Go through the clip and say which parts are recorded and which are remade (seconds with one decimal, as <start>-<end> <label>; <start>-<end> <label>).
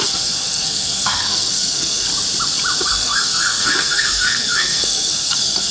0.0-2.1 remade; 2.1-2.8 recorded; 2.8-5.7 remade